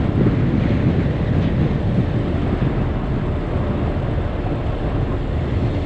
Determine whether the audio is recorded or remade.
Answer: recorded